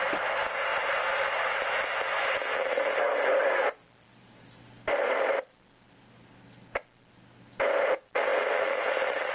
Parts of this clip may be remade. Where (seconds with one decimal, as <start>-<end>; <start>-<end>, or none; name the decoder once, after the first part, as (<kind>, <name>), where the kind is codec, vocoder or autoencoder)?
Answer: none